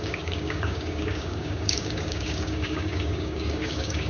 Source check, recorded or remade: remade